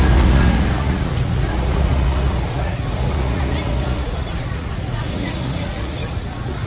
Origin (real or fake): fake